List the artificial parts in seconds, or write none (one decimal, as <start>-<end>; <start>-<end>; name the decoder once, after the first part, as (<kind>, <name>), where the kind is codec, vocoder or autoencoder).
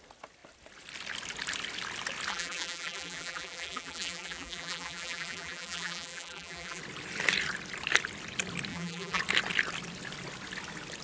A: 2.3-6.8 (vocoder, BigVGAN v2); 8.7-9.2